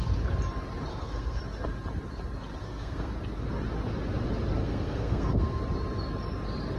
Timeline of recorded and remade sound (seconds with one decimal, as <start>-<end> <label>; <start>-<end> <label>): 0.0-0.9 recorded; 0.9-1.4 remade; 1.4-2.6 recorded; 2.6-3.1 remade; 3.1-4.6 recorded; 4.6-5.6 remade; 5.6-6.8 recorded